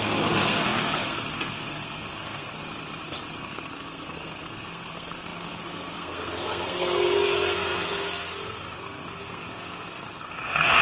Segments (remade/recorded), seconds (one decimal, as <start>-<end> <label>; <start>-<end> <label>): 0.0-2.6 remade; 2.6-3.4 recorded; 3.4-10.8 remade